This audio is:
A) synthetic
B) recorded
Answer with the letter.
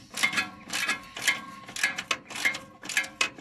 B